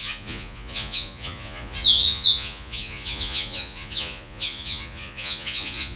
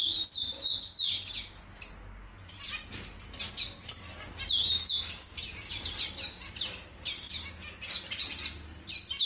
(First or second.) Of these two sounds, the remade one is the first